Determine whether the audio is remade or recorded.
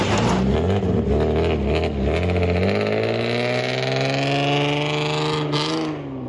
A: recorded